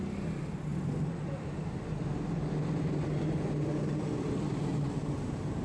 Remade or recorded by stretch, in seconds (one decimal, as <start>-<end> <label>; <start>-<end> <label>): 0.0-4.7 recorded; 4.7-5.6 remade